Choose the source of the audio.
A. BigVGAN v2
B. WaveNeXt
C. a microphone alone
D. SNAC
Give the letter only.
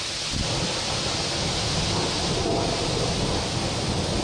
C